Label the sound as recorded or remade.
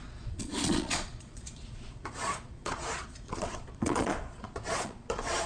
remade